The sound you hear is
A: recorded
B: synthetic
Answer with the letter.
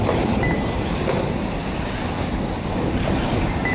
A